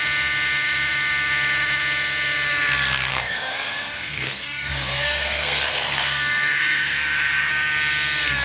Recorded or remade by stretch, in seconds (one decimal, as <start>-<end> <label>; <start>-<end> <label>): 0.0-3.1 recorded; 3.1-7.5 remade; 7.5-8.4 recorded